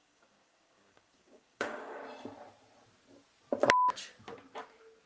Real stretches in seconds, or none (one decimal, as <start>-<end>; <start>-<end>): 2.0-5.1